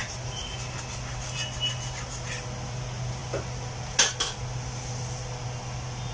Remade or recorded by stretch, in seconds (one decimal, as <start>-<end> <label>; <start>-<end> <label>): 0.0-6.1 recorded